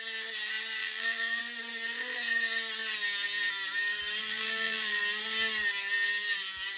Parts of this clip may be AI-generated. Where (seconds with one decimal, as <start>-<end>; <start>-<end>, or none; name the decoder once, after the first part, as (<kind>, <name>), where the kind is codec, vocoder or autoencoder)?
0.8-1.4 (vocoder, BigVGAN v2); 4.2-5.0